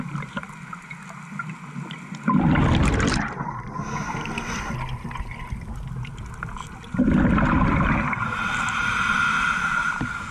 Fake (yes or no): no